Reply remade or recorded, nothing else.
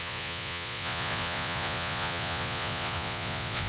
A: remade